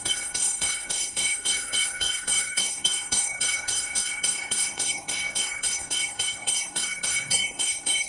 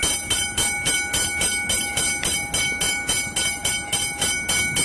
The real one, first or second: second